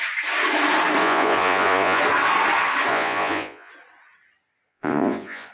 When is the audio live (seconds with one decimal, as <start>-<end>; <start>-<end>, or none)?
0.0-1.0; 2.0-2.9; 3.7-4.7